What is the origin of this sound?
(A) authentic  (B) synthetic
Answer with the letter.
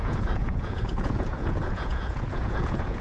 B